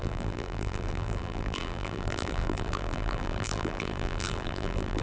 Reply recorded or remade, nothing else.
remade